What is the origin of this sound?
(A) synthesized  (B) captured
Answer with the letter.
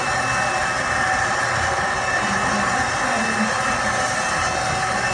B